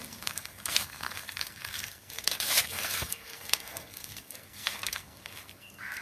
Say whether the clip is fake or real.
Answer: fake